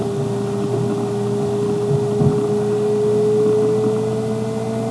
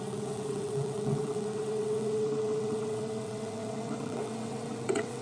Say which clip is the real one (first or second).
first